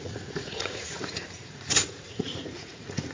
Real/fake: fake